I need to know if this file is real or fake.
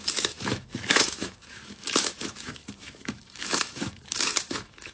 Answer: fake